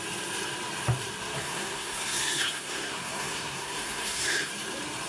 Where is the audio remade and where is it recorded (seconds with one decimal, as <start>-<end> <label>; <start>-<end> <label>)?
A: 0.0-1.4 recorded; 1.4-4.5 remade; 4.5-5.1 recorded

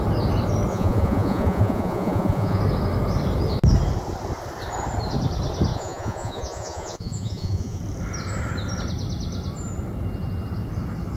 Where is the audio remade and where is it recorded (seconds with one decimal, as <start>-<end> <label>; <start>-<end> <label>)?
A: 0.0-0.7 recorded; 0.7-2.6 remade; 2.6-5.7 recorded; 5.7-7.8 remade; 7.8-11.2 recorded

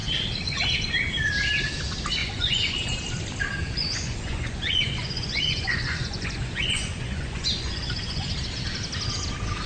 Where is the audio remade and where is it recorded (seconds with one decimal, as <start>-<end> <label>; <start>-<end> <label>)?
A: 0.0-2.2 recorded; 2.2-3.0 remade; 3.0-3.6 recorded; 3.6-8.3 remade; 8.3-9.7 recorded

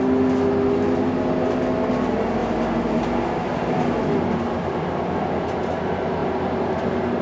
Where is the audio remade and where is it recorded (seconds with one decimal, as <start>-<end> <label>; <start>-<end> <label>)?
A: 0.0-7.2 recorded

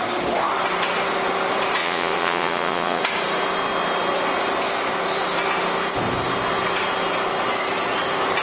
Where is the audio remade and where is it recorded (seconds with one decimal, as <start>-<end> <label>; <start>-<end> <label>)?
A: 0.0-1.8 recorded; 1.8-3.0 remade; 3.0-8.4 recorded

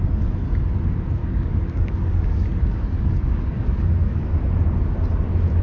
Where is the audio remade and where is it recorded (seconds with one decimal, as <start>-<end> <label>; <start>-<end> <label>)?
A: 0.0-1.2 recorded; 1.2-4.3 remade; 4.3-5.6 recorded

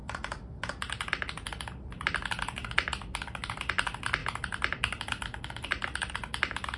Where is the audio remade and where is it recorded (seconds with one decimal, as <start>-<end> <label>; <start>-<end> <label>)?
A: 0.0-6.8 recorded